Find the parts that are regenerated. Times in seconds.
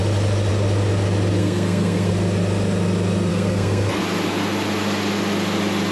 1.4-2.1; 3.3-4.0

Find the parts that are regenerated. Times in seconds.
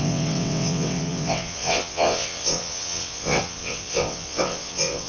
0.0-5.1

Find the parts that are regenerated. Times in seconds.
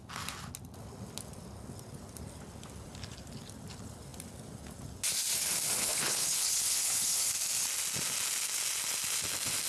5.8-7.3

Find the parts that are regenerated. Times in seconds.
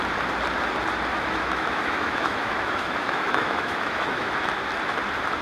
1.1-4.3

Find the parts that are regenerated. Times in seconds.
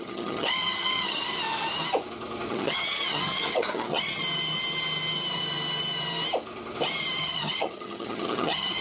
0.0-1.2; 2.5-4.2; 7.2-8.8